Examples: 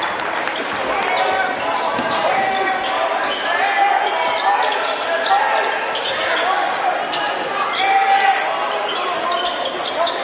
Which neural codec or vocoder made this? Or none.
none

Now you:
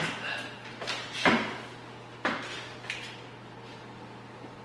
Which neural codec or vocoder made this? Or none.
none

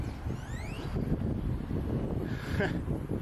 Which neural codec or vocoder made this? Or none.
none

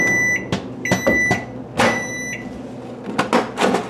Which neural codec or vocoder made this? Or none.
none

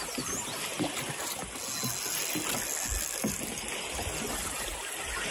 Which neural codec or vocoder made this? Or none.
none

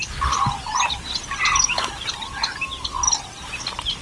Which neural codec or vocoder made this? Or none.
none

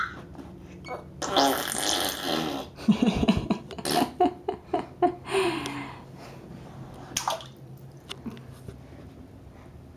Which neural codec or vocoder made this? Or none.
none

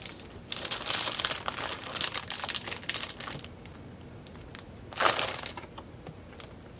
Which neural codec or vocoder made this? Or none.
none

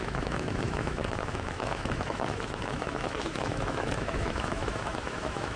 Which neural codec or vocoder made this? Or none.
autoencoder, DAC-VAE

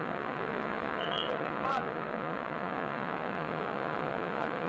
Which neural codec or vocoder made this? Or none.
vocoder, Vocos